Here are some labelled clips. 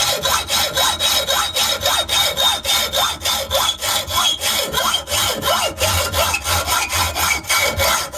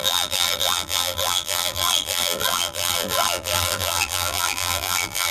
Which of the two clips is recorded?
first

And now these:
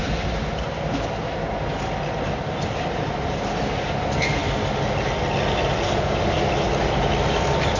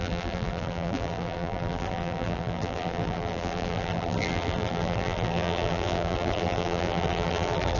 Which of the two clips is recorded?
first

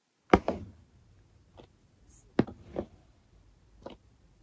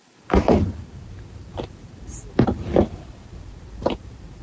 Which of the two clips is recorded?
first